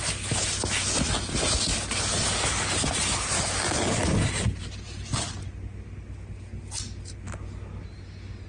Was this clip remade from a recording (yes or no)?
no